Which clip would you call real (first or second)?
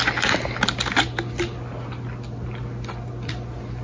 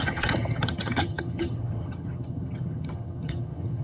first